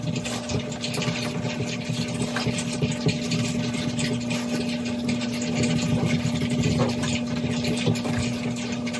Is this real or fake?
real